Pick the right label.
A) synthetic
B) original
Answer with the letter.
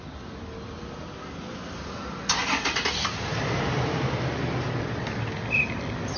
B